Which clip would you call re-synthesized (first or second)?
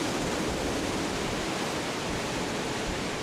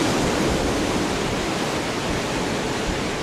first